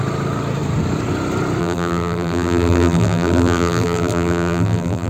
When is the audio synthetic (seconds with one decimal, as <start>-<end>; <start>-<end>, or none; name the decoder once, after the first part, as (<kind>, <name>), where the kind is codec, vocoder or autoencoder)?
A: 1.6-5.1 (vocoder, BigVGAN v2)